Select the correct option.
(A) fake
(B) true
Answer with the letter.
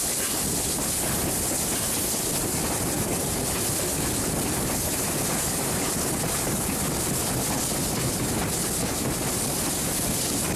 B